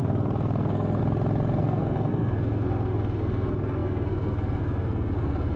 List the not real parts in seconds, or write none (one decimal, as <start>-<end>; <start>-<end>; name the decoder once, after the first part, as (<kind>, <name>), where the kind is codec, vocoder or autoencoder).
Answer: 0.0-1.0 (codec, SNAC); 1.6-5.6